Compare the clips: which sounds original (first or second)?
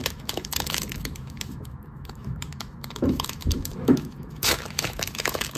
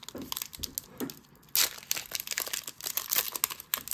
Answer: second